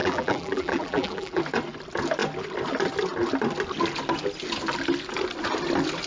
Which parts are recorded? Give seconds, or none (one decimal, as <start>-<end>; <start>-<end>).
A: 1.4-6.1